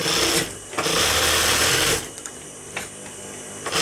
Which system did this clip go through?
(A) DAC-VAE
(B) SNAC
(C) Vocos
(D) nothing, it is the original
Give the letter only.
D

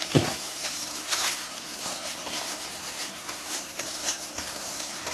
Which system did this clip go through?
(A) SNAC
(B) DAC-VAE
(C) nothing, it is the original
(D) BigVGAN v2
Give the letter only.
A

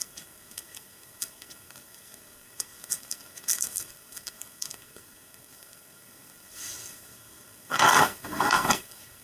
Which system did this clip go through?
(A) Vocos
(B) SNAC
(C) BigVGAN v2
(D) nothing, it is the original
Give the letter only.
B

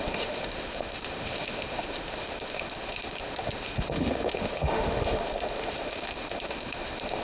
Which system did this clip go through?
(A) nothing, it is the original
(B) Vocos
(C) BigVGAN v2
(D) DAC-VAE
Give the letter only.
D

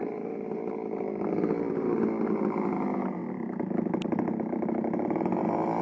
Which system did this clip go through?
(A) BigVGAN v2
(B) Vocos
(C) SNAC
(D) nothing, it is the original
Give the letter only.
A